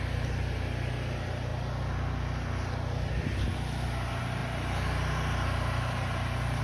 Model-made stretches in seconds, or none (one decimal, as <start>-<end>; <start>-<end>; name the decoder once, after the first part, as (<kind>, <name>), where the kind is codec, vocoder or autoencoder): none